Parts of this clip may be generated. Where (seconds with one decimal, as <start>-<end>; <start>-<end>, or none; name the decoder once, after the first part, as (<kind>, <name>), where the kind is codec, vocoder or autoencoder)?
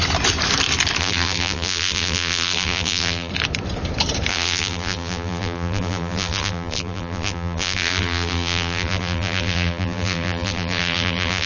1.0-3.3 (vocoder, BigVGAN v2); 4.3-11.5